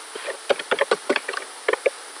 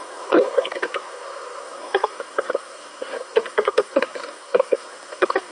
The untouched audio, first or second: first